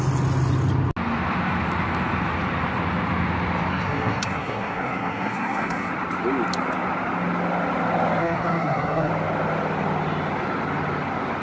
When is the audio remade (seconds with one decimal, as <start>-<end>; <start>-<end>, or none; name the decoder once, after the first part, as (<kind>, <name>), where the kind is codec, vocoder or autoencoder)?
3.7-5.9 (codec, SNAC); 8.2-9.1